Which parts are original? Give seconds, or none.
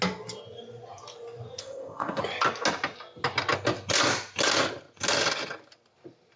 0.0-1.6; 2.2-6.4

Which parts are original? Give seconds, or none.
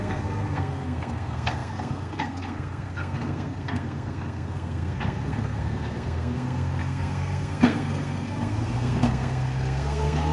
none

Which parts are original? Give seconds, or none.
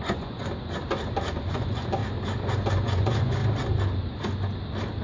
0.4-1.4; 2.0-2.7; 3.4-5.0